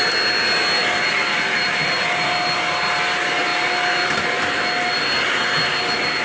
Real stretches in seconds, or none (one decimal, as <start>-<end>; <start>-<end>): 0.0-6.2